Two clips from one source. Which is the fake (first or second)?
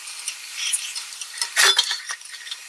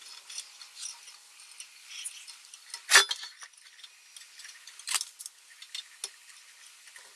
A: first